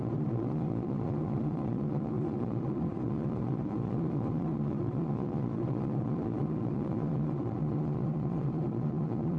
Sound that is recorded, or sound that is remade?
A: remade